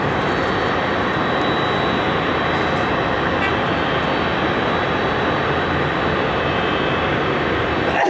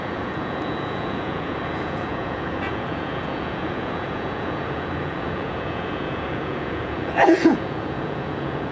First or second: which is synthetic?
second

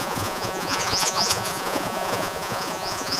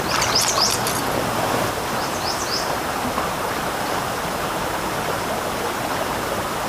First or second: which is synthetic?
first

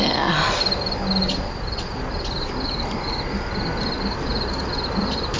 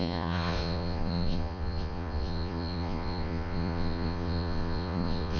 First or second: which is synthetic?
second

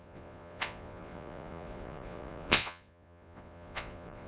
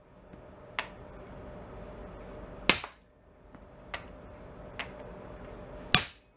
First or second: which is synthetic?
first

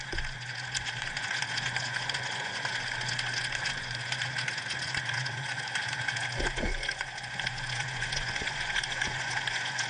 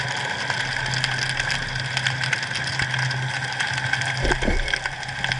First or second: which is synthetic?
first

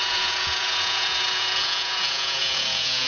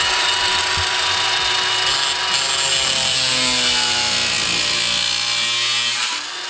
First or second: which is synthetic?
first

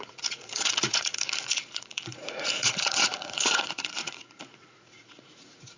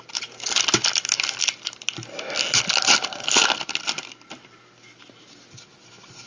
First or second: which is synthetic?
first